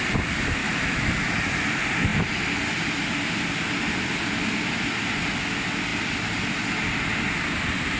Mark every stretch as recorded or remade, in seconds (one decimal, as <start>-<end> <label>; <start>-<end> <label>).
0.0-0.6 recorded; 0.6-1.1 remade; 1.1-8.0 recorded